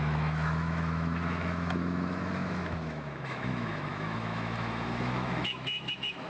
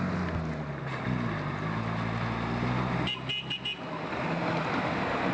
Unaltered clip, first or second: second